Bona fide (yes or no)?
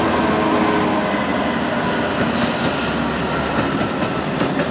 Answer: yes